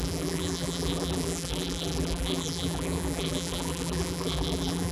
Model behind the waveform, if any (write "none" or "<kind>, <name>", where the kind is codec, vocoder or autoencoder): vocoder, BigVGAN v2